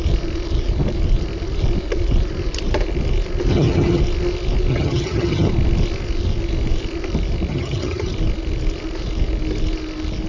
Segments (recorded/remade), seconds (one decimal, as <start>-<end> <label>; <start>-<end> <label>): 0.0-3.5 recorded; 3.5-4.0 remade; 4.0-4.7 recorded; 4.7-5.5 remade; 5.5-7.5 recorded; 7.5-8.1 remade; 8.1-10.3 recorded